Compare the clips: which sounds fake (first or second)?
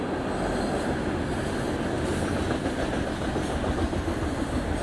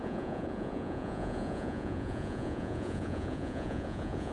second